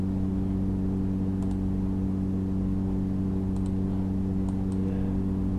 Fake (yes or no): no